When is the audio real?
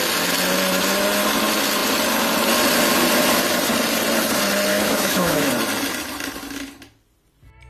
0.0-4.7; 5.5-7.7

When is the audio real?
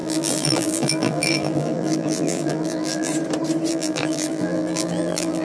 3.1-3.7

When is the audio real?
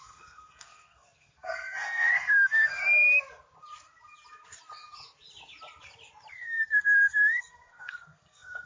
2.8-6.3